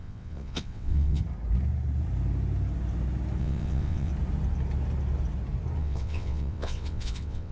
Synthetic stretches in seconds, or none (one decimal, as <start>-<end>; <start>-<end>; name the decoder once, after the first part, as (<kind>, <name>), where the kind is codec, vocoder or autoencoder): 0.0-1.2 (vocoder, WaveNeXt); 3.4-4.1; 5.8-7.5